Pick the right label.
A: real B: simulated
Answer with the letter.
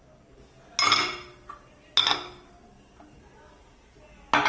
A